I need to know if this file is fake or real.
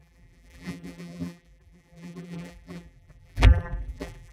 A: fake